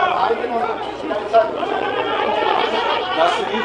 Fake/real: fake